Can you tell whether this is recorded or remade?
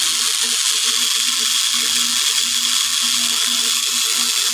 recorded